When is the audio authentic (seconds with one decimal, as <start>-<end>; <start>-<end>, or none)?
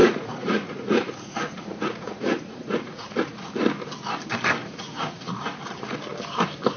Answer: 3.5-4.6; 5.3-6.8